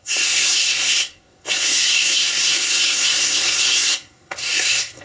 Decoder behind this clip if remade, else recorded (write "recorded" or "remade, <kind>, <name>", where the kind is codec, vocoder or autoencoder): remade, codec, SNAC